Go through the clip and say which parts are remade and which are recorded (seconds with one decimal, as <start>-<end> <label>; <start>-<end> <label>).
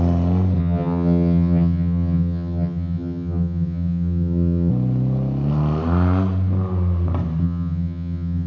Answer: 0.0-0.6 recorded; 0.6-4.7 remade; 4.7-7.4 recorded; 7.4-8.5 remade